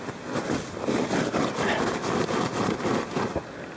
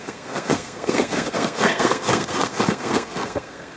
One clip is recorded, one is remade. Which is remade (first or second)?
second